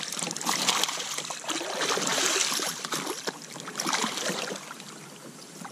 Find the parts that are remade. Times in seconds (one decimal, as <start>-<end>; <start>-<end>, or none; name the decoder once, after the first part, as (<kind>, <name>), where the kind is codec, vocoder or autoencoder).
0.0-2.1 (vocoder, BigVGAN v2); 2.8-5.7